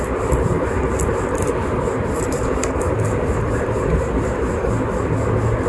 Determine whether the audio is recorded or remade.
recorded